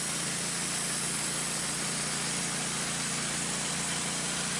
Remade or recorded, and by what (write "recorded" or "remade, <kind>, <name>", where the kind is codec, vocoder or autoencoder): recorded